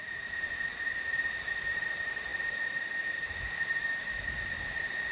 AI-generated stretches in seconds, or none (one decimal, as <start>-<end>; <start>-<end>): 0.0-0.9; 1.6-5.1